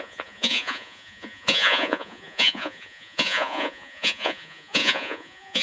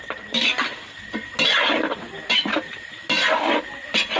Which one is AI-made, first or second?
first